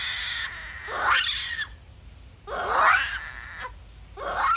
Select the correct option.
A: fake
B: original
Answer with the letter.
B